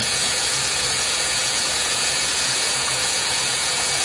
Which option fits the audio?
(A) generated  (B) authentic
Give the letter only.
A